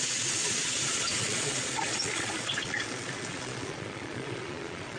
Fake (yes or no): yes